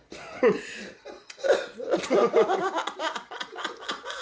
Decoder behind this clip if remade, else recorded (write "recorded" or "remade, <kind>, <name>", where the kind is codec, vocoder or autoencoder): recorded